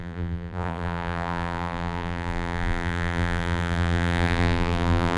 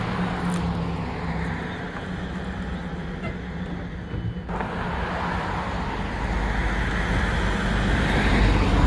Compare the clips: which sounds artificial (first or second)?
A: first